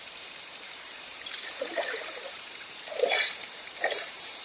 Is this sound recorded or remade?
remade